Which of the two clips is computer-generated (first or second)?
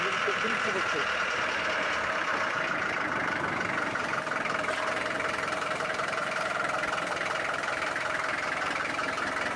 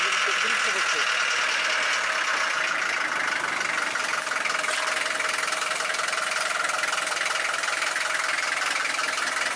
first